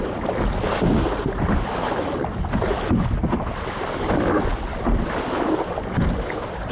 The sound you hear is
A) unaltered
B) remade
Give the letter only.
A